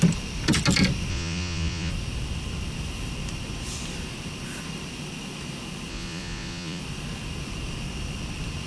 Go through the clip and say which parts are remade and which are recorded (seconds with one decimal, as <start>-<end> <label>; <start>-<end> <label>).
0.0-1.1 recorded; 1.1-1.9 remade; 1.9-5.9 recorded; 5.9-6.8 remade; 6.8-8.7 recorded